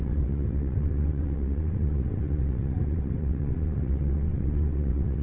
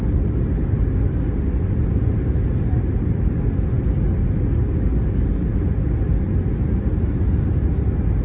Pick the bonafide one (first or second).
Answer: second